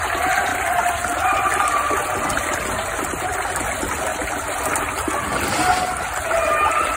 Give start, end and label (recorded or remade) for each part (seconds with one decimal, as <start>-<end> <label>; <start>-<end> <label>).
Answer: 0.0-7.0 recorded